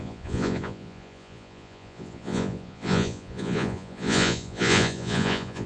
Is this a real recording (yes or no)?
no